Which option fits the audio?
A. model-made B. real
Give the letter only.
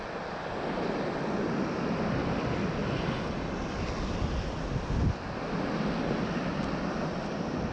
B